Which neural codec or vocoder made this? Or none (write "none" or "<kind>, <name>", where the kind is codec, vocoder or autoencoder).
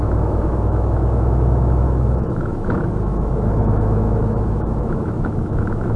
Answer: autoencoder, DAC-VAE